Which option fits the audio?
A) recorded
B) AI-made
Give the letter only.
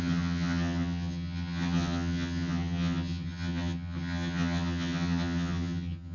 B